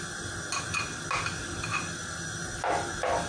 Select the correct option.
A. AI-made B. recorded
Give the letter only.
B